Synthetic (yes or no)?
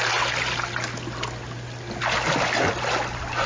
no